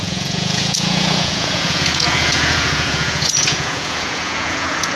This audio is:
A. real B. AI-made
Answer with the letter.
B